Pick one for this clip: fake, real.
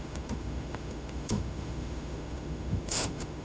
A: fake